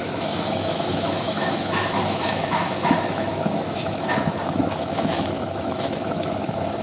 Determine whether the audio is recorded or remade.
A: remade